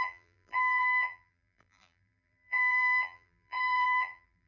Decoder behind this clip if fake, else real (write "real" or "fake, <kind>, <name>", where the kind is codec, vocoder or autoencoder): fake, vocoder, BigVGAN v2